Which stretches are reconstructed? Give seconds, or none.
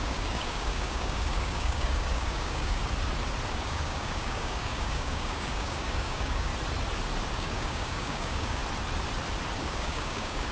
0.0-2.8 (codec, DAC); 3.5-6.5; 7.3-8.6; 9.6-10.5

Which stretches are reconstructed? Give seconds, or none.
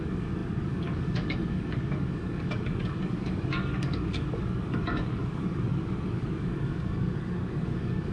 0.0-8.1 (codec, DAC)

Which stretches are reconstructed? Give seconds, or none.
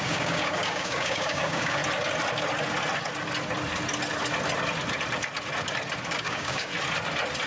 0.0-1.8 (codec, DAC); 6.2-6.7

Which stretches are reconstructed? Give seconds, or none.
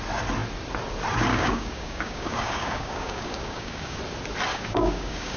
1.3-4.0 (codec, DAC); 4.5-5.4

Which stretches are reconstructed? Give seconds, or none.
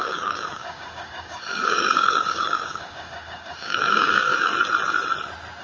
0.0-4.5 (codec, DAC)